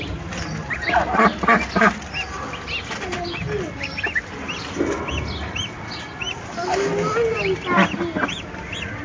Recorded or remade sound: recorded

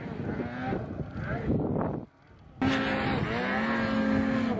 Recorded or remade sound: recorded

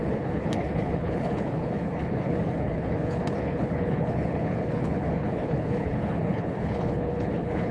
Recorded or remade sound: remade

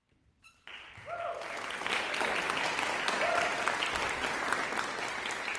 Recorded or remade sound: recorded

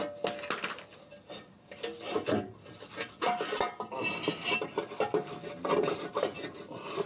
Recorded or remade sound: recorded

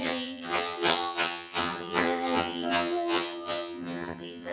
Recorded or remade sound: remade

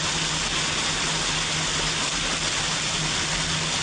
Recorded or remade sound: recorded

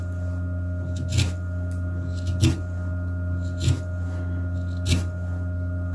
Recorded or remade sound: recorded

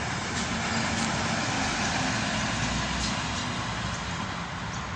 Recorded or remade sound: recorded